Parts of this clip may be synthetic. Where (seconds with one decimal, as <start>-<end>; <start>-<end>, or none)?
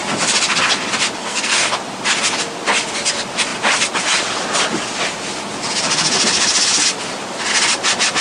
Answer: 1.2-1.7